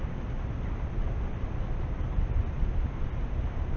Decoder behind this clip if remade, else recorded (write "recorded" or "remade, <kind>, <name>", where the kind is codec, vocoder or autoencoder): recorded